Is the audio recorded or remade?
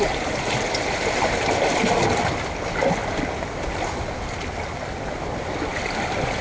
recorded